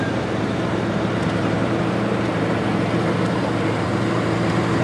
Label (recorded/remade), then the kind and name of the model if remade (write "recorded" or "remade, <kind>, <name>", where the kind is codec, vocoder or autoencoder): remade, vocoder, BigVGAN v2